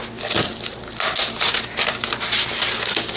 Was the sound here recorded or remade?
recorded